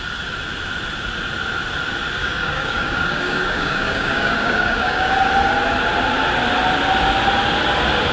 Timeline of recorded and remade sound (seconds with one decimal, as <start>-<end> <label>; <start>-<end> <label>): 0.0-2.2 recorded; 2.2-5.1 remade; 5.1-8.1 recorded